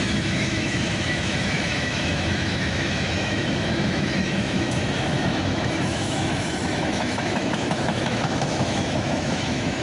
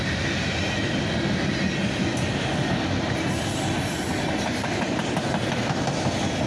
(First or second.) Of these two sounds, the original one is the second